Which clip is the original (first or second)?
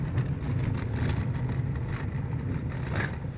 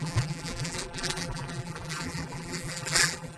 first